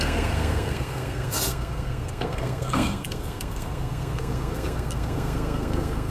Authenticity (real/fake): fake